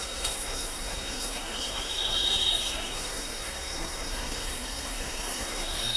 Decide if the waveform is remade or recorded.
remade